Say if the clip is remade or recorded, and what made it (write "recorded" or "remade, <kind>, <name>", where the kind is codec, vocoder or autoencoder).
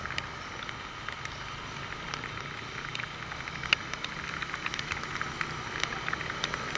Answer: recorded